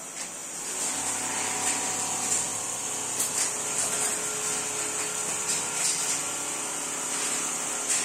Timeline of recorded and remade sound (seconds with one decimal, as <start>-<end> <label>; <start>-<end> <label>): 0.0-8.0 recorded